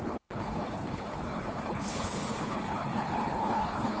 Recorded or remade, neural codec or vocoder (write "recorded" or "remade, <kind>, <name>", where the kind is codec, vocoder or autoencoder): remade, codec, HILCodec